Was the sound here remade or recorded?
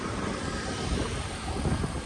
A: remade